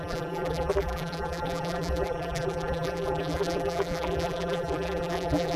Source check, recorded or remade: remade